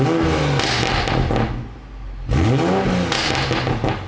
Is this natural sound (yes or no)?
yes